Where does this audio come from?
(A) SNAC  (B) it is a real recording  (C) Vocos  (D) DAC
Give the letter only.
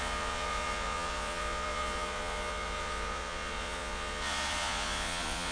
C